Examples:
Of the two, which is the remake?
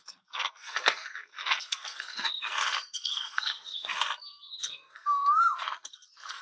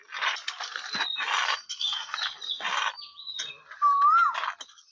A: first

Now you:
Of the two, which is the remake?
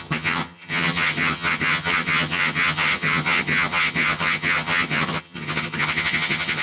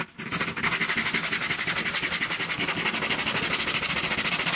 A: first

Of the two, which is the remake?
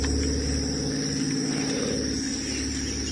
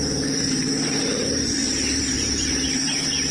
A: second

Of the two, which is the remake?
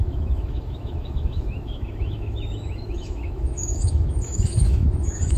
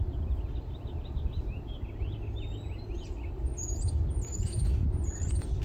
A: first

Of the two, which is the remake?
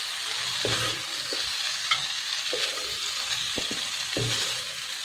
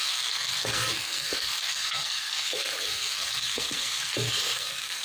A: second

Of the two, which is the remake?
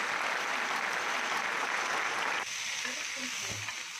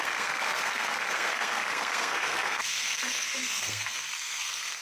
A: second